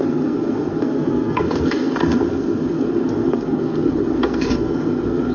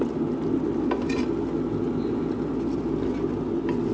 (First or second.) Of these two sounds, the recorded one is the second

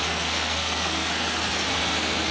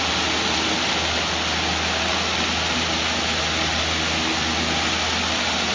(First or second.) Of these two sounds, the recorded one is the second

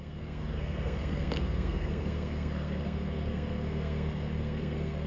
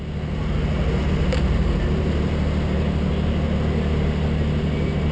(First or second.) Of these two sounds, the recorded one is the second